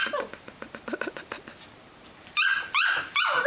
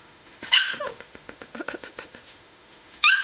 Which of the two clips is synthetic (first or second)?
second